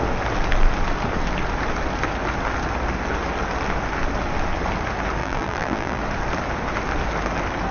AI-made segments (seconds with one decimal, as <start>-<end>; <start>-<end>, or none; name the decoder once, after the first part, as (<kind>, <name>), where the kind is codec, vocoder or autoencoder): 5.2-6.0 (vocoder, BigVGAN v2)